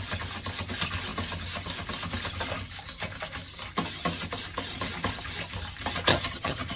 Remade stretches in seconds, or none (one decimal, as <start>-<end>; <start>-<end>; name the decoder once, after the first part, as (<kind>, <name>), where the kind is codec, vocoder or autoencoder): 6.1-6.8 (vocoder, HiFi-GAN)